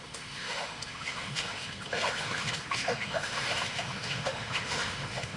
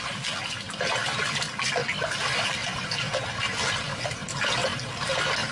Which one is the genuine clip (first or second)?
second